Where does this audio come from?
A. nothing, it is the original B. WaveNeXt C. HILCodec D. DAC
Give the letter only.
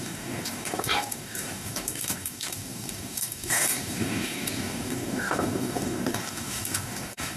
D